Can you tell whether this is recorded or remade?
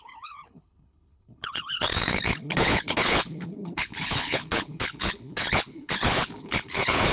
remade